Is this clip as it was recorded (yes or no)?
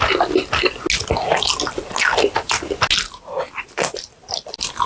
yes